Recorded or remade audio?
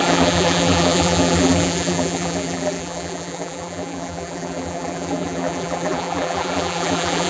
remade